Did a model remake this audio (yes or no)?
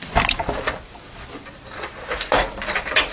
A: yes